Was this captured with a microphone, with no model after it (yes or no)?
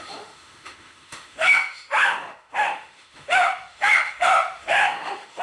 no